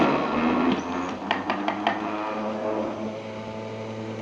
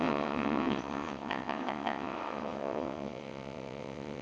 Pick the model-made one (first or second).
second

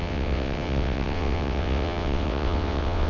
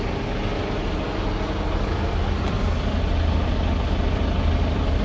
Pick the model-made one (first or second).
first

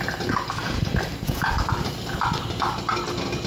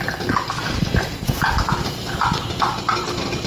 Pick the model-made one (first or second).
second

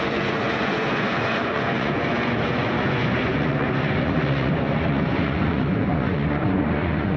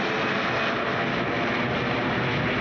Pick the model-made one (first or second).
first